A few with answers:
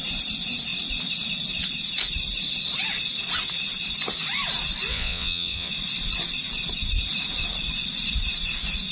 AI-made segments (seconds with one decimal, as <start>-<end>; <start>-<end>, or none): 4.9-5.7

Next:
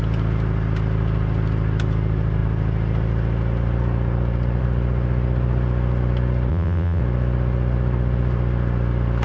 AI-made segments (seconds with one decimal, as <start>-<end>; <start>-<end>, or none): 6.5-7.0

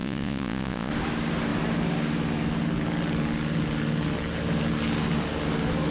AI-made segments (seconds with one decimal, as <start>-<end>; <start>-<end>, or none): 0.0-0.9

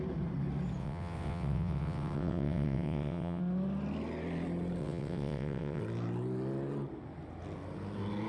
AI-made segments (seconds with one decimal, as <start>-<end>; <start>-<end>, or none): 0.8-3.4; 4.8-5.8

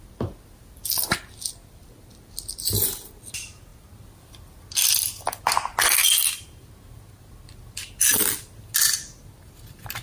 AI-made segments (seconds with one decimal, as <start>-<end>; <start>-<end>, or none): none

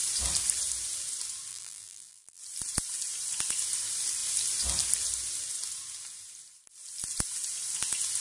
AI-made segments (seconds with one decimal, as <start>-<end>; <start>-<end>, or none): 1.5-2.4

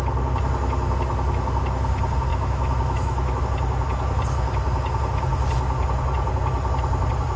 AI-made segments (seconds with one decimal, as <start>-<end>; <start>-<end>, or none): 2.3-3.4

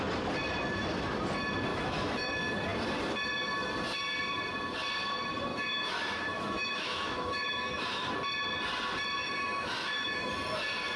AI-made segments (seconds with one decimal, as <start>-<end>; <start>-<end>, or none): 1.7-2.3; 5.5-8.1; 9.2-10.3